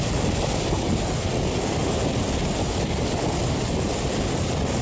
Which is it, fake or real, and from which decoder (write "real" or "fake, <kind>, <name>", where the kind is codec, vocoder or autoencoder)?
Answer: real